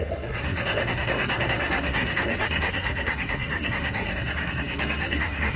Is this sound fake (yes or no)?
yes